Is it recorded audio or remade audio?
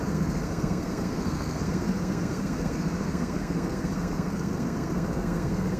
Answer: remade